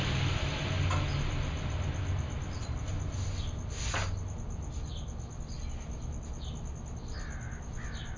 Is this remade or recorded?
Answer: recorded